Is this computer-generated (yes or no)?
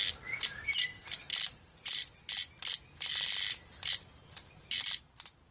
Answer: no